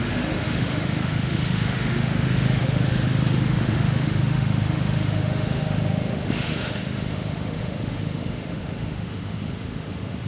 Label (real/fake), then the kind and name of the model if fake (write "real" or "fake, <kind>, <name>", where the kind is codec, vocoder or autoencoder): fake, autoencoder, DAC-VAE